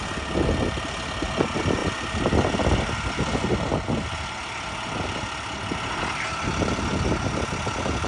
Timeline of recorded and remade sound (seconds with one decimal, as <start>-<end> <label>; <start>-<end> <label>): 0.0-8.1 recorded